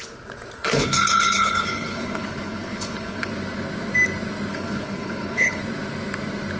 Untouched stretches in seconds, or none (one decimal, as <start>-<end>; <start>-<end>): 0.0-0.6; 3.3-4.5; 5.6-6.6